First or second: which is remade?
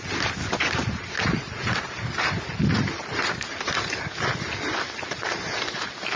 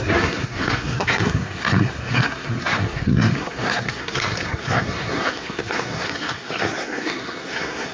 second